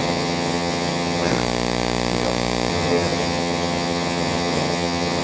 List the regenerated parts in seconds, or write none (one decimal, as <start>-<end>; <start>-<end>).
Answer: 0.0-1.3; 2.7-5.2

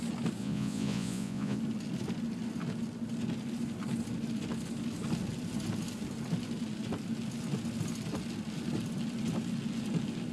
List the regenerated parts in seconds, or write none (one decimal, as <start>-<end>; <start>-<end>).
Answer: 0.4-1.6

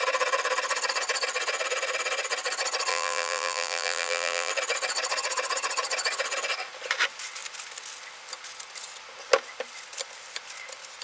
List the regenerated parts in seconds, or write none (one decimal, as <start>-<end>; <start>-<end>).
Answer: 2.9-4.5

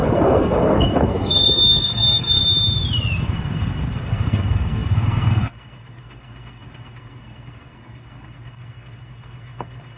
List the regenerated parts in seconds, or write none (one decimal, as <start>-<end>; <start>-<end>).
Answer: 0.0-2.4; 3.2-10.0

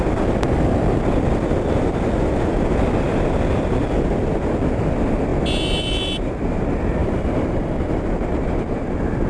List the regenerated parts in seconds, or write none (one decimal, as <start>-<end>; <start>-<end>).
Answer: none